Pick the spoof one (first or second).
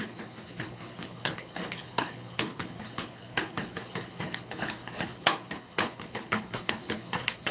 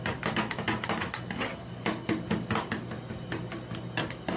first